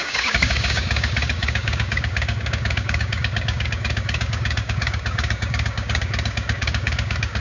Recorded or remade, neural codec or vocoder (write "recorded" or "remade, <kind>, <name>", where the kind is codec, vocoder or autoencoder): remade, codec, DAC